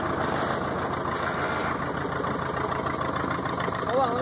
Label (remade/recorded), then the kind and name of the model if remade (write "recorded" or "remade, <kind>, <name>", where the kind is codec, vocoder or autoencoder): recorded